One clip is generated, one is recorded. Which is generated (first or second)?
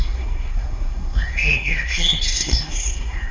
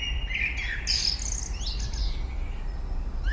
first